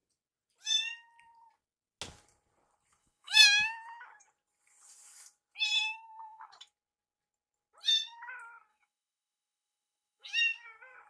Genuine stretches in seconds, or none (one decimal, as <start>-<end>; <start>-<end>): 0.0-3.0; 3.7-5.7; 6.5-8.7; 10.4-11.1